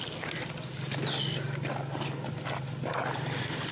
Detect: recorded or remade recorded